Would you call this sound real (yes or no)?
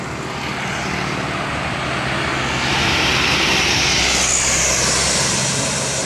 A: yes